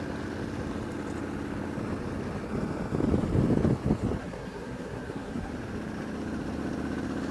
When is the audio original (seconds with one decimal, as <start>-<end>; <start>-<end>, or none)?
0.0-4.2; 5.5-7.3